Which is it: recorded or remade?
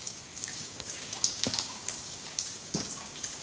remade